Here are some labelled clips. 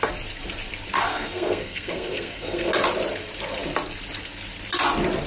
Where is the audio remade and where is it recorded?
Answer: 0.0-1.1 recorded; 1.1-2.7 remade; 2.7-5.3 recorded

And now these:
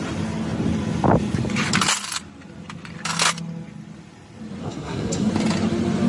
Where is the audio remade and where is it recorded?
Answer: 0.0-4.6 recorded; 4.6-5.3 remade; 5.3-6.1 recorded

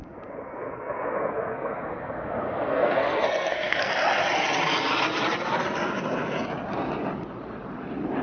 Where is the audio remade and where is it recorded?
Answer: 0.0-3.9 remade; 3.9-8.2 recorded

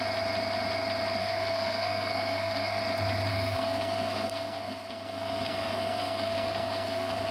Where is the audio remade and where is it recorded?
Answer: 0.0-1.2 recorded; 1.2-2.8 remade; 2.8-3.3 recorded; 3.3-7.3 remade

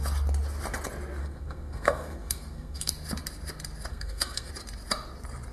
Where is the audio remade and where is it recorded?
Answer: 0.0-1.2 recorded; 1.2-2.9 remade; 2.9-3.9 recorded; 3.9-4.5 remade; 4.5-5.5 recorded

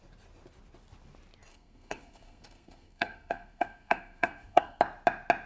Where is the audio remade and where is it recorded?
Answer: 0.0-1.5 recorded; 1.5-4.8 remade; 4.8-5.5 recorded

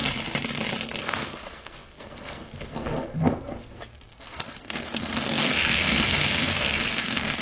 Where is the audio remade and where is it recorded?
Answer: 0.0-1.0 recorded; 1.0-7.4 remade